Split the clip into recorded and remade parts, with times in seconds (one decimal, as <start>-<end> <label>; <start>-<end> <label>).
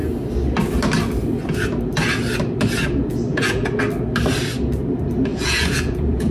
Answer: 0.0-3.3 recorded; 3.3-3.8 remade; 3.8-5.3 recorded; 5.3-6.3 remade